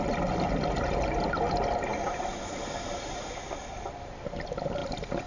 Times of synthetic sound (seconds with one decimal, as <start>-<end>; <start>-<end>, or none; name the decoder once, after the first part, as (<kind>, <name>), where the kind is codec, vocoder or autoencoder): none